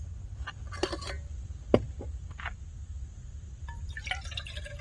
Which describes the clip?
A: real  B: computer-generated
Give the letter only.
A